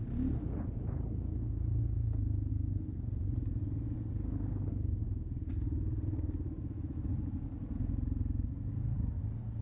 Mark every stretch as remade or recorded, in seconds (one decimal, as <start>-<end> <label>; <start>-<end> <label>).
0.0-2.5 recorded; 2.5-3.0 remade; 3.0-9.6 recorded